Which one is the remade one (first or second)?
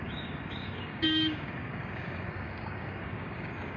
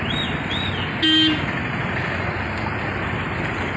first